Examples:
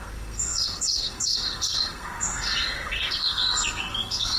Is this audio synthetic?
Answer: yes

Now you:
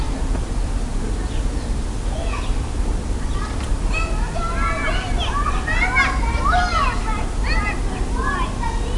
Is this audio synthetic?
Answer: no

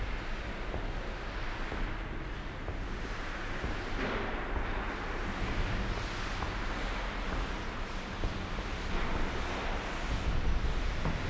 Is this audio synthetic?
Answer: no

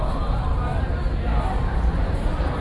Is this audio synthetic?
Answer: no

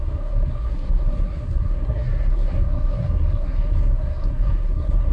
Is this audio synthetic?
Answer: yes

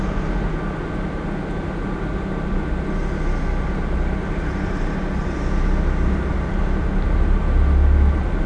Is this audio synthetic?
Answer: no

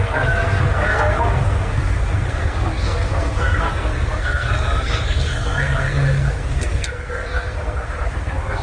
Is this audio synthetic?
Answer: yes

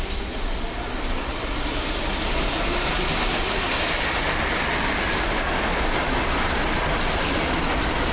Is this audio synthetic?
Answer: no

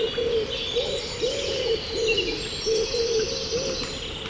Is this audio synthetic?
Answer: no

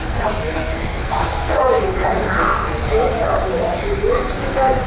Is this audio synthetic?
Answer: yes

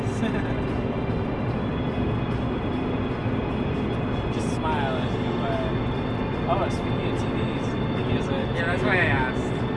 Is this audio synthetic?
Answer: no